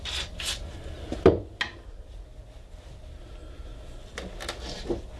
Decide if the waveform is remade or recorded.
recorded